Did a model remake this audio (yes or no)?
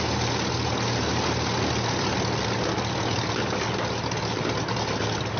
no